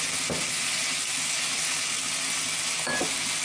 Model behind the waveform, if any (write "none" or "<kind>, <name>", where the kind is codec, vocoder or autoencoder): none